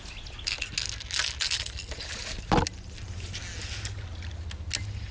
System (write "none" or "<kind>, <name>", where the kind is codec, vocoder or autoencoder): none